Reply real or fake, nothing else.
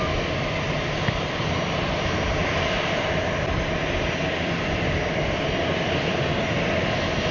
real